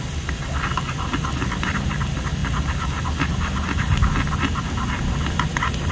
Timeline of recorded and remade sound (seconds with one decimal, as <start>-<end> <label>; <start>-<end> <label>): 0.0-5.9 recorded